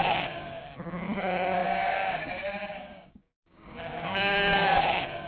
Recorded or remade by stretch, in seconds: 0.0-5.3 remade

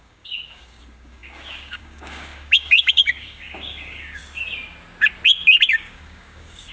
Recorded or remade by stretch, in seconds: 0.0-4.2 remade; 4.2-5.7 recorded; 5.7-6.7 remade

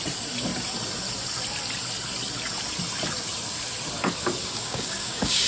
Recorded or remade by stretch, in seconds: 0.0-4.4 recorded; 4.4-5.5 remade

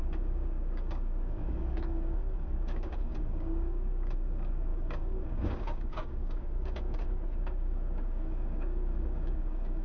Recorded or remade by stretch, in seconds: 0.0-9.8 remade

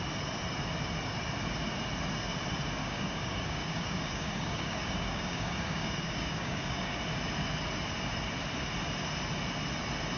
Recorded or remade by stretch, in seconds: 0.0-2.8 recorded; 2.8-7.0 remade; 7.0-10.2 recorded

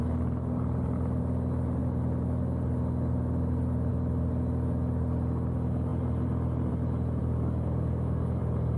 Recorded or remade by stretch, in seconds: 0.0-7.2 recorded; 7.2-8.4 remade; 8.4-8.8 recorded